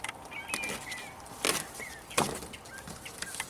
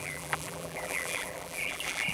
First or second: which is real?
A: first